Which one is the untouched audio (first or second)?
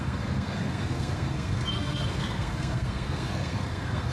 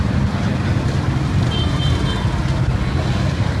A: second